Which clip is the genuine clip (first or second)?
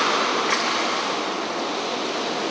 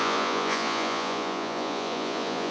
first